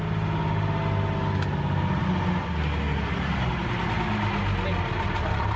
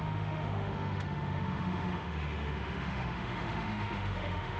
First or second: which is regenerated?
second